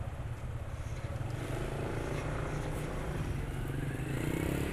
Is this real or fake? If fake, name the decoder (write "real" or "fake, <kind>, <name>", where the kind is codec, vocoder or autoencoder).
real